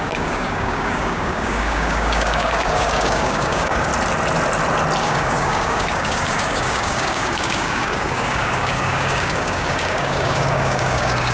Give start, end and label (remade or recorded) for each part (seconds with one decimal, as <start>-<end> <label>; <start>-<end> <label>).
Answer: 0.0-3.9 remade; 3.9-5.0 recorded; 5.0-11.3 remade

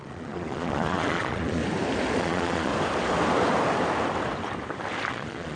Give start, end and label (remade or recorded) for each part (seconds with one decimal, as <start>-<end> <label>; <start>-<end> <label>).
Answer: 0.0-1.6 remade; 1.6-2.2 recorded; 2.2-2.7 remade; 2.7-5.1 recorded; 5.1-5.6 remade